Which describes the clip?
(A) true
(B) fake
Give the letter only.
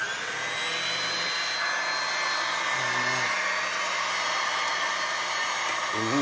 A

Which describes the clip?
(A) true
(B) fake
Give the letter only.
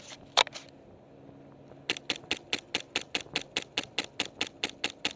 A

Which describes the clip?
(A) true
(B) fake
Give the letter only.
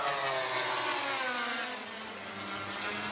A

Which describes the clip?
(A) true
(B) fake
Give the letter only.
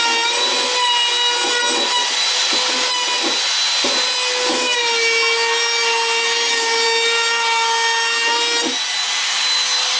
A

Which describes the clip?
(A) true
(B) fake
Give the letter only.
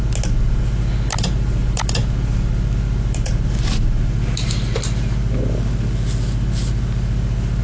A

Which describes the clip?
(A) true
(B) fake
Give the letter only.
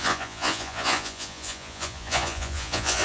B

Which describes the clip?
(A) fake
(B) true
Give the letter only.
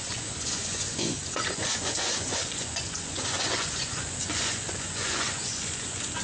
A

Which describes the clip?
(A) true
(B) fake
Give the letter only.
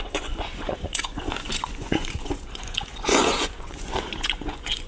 B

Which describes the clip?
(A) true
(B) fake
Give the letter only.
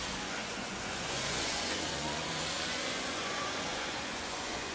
B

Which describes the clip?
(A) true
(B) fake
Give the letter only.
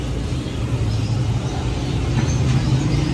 A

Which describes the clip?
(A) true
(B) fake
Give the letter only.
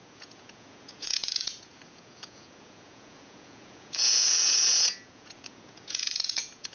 B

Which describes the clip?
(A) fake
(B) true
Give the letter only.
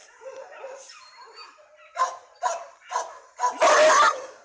B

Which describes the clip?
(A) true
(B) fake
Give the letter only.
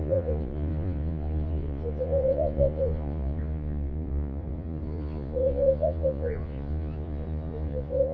B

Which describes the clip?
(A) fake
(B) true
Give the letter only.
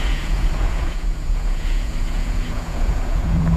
A